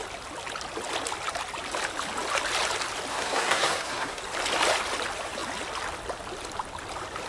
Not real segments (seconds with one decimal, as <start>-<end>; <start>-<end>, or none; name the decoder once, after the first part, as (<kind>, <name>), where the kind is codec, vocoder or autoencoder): 3.1-4.2 (codec, SNAC)